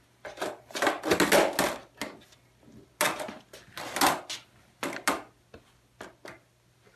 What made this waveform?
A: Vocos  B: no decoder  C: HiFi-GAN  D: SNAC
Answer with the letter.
B